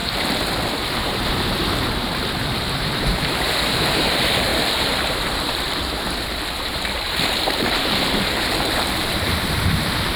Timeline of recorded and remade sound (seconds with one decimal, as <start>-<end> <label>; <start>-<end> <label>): 0.0-0.7 recorded; 0.7-10.2 remade